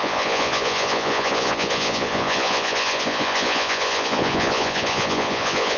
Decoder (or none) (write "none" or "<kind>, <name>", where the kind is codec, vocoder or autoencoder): vocoder, Vocos